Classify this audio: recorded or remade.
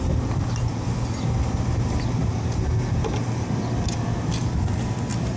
recorded